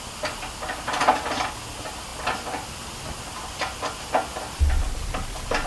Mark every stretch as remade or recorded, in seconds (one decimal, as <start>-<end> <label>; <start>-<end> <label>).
0.0-5.7 recorded